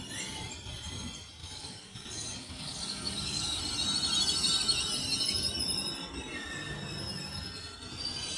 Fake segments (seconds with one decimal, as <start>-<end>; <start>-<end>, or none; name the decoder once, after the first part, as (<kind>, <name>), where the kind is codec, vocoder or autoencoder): 1.4-3.6 (codec, DAC)